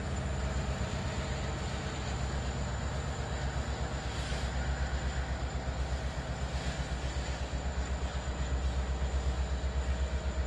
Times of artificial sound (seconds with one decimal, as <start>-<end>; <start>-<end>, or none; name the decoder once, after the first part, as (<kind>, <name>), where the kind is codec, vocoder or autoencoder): none